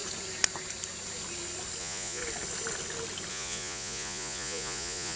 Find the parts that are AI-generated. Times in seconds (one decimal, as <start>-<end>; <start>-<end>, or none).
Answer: 1.8-2.2; 3.3-5.2